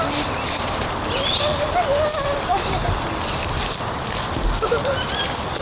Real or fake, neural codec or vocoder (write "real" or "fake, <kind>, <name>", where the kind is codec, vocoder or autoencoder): fake, vocoder, BigVGAN v2